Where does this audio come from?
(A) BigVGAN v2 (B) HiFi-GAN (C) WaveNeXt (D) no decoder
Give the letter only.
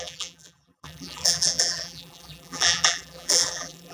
A